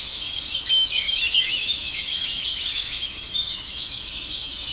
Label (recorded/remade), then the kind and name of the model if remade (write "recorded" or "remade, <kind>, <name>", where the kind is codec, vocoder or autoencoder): remade, autoencoder, DAC-VAE